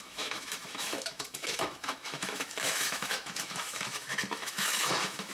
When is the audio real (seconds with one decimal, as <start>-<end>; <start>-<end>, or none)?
none